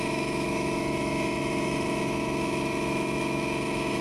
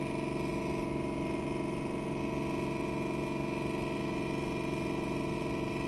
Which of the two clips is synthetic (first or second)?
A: first